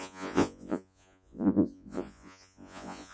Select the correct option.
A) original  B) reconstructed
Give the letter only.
B